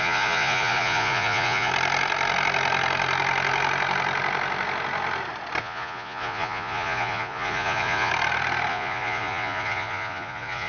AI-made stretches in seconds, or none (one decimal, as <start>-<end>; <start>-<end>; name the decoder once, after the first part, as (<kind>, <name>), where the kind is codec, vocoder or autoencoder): 0.0-1.7 (vocoder, Vocos); 5.6-8.1; 8.7-10.7